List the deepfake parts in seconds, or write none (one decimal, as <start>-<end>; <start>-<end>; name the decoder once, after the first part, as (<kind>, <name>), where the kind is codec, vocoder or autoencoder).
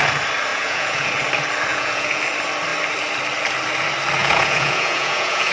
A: 0.5-1.1 (vocoder, Vocos); 1.7-2.2; 4.2-5.5